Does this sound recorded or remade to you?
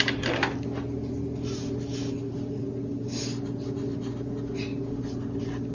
recorded